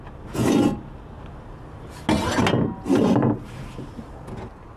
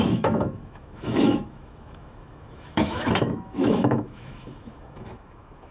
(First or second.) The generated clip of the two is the second